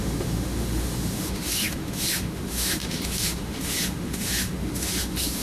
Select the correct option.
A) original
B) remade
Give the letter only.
B